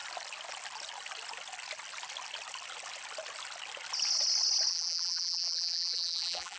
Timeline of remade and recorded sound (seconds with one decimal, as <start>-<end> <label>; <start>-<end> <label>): 0.0-4.7 recorded; 4.7-6.6 remade

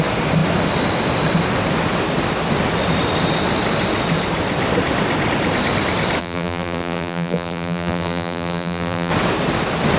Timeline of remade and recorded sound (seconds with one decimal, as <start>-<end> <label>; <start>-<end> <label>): 0.0-6.2 recorded; 6.2-9.1 remade; 9.1-10.0 recorded

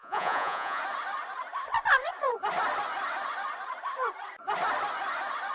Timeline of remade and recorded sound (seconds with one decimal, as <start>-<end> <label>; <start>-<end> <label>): 0.0-0.8 remade; 0.8-5.5 recorded

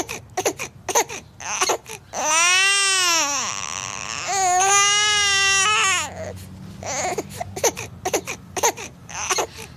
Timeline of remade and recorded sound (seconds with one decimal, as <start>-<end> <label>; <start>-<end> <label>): 0.0-9.0 recorded; 9.0-9.8 remade

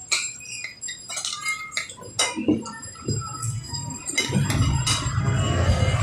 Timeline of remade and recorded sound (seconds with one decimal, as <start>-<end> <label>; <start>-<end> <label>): 0.0-3.4 recorded; 3.4-4.0 remade; 4.0-5.2 recorded; 5.2-6.0 remade

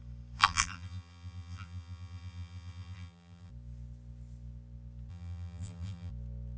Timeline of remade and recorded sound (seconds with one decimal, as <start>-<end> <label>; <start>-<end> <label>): 0.0-0.4 recorded; 0.4-3.5 remade; 3.5-5.1 recorded; 5.1-6.1 remade; 6.1-6.6 recorded

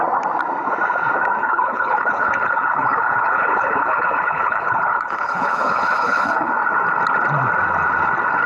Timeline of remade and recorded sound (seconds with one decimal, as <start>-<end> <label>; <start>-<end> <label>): 0.0-1.4 recorded; 1.4-6.5 remade; 6.5-8.5 recorded

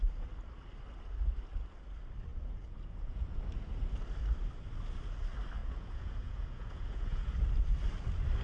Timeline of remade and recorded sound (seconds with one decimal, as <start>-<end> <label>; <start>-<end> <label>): 0.0-2.3 recorded; 2.3-3.4 remade; 3.4-5.6 recorded; 5.6-7.3 remade; 7.3-8.4 recorded